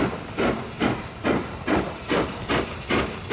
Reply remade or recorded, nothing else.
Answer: recorded